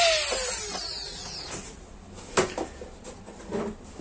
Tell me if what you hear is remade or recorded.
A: recorded